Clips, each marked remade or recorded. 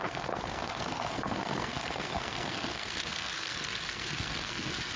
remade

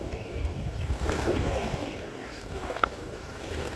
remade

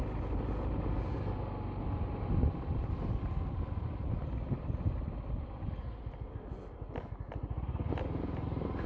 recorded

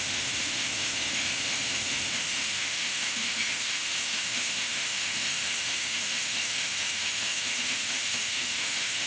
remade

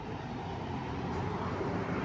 remade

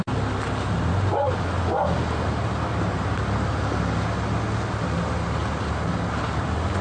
recorded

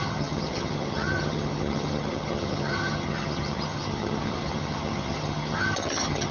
remade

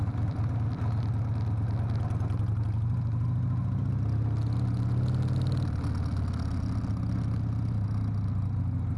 recorded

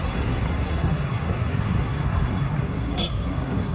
remade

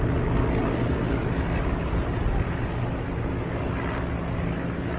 recorded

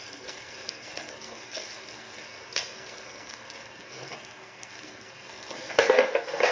remade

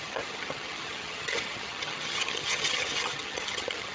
remade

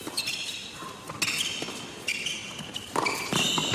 recorded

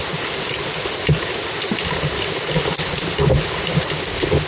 recorded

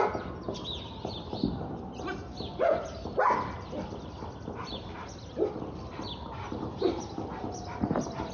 recorded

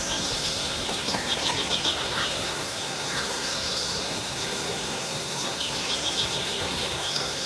remade